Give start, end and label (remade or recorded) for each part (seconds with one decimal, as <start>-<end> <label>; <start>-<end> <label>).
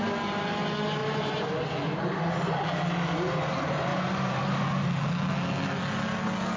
0.0-1.0 recorded; 1.0-2.5 remade; 2.5-3.9 recorded; 3.9-4.4 remade; 4.4-6.6 recorded